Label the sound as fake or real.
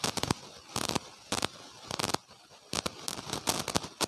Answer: real